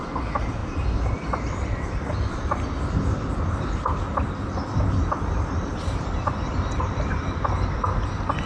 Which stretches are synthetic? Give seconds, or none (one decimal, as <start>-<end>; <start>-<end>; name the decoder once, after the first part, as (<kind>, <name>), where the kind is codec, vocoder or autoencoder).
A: 0.6-2.4 (vocoder, BigVGAN v2); 5.7-8.0